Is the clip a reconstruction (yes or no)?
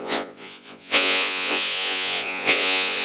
yes